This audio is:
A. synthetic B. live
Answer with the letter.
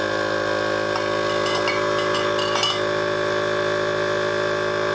B